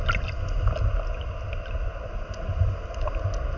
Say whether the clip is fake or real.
real